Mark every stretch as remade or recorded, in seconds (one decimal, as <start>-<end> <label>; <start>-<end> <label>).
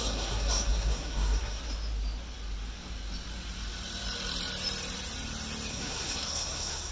0.0-1.6 remade; 1.6-5.7 recorded; 5.7-6.9 remade